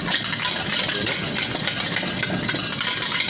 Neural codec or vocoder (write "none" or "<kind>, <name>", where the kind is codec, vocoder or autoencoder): none